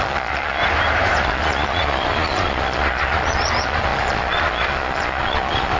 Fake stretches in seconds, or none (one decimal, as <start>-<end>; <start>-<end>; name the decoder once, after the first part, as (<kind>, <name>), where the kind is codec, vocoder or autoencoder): 0.0-0.6 (vocoder, Vocos); 1.2-5.8

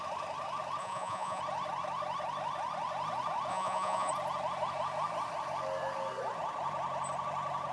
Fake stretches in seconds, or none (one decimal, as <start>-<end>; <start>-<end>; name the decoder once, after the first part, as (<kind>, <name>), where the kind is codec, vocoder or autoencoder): 0.8-1.4 (vocoder, Vocos); 3.5-4.1

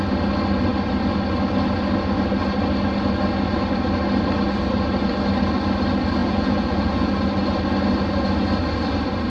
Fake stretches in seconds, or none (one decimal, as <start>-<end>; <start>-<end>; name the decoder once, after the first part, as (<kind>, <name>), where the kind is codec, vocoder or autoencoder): 6.2-7.1 (vocoder, Vocos)

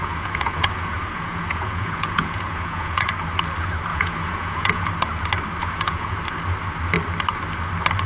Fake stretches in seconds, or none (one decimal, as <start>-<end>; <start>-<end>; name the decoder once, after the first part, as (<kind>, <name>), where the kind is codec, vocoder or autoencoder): 0.0-3.1 (vocoder, Vocos); 3.9-4.9; 5.6-6.2

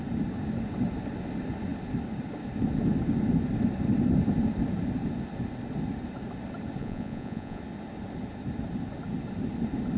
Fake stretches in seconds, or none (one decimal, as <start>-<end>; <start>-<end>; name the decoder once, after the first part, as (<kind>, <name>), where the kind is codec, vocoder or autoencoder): 6.8-7.6 (vocoder, Vocos)